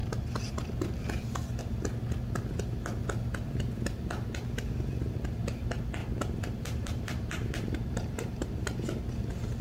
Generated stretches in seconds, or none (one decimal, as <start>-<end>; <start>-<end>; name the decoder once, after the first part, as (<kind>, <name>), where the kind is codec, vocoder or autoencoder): 6.0-9.0 (vocoder, BigVGAN v2)